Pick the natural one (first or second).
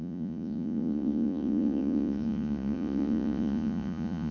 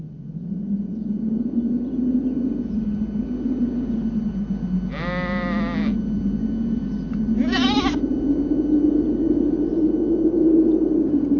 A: second